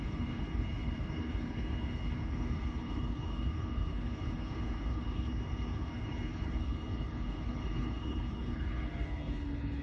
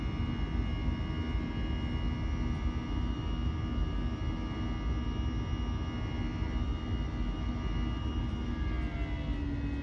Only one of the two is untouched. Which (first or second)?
second